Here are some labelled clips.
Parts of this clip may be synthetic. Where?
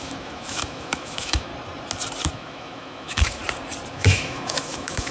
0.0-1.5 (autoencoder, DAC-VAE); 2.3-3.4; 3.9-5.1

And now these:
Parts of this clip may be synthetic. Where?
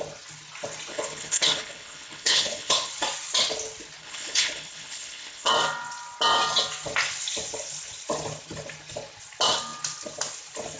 0.9-2.9 (codec, HILCodec); 4.0-5.5